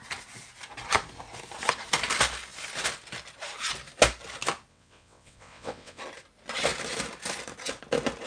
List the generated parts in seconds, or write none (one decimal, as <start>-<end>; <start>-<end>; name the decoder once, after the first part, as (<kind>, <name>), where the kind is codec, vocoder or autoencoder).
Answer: 4.7-6.0 (vocoder, WaveNeXt)